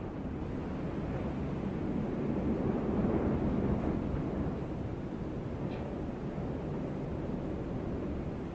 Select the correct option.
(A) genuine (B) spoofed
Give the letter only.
A